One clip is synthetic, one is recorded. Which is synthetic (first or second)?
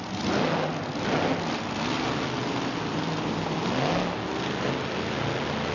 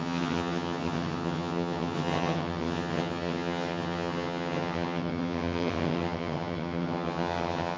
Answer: second